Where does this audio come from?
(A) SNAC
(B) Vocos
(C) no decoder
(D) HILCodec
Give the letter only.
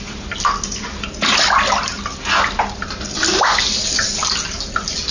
C